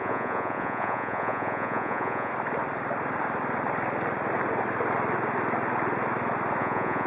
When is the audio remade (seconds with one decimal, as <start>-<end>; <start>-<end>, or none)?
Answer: 0.0-2.3; 6.6-7.1